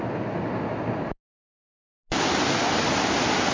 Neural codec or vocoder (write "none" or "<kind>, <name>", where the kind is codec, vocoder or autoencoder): none